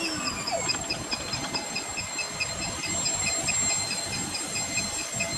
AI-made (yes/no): no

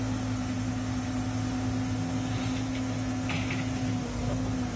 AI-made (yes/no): no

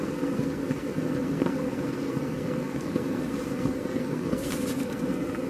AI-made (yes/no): yes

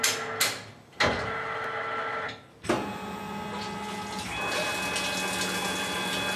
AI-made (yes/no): no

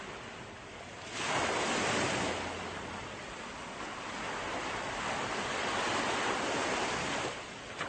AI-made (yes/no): no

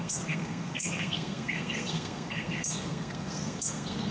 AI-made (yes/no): yes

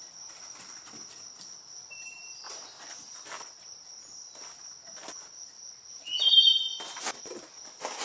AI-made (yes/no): no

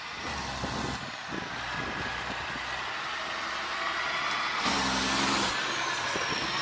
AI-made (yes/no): no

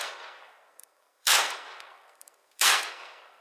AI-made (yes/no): yes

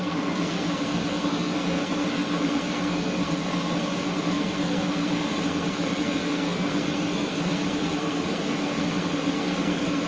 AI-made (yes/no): yes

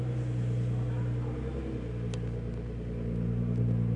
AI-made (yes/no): no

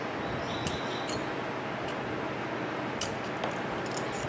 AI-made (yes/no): no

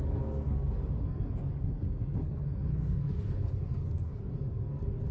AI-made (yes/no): yes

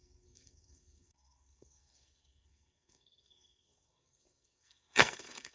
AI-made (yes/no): yes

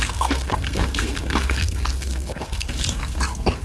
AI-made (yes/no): yes